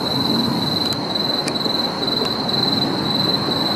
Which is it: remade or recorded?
recorded